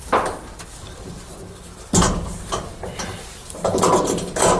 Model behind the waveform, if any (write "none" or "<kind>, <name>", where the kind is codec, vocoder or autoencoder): none